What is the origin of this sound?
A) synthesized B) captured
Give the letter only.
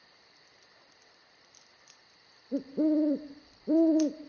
A